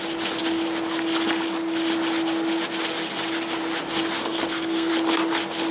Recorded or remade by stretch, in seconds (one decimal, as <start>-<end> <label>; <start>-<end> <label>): 0.0-4.2 recorded; 4.2-4.9 remade; 4.9-5.7 recorded